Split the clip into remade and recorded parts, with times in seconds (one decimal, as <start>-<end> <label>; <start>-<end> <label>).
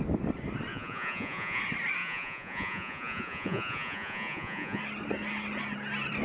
0.0-0.7 recorded; 0.7-1.6 remade; 1.6-2.0 recorded; 2.0-4.8 remade; 4.8-6.2 recorded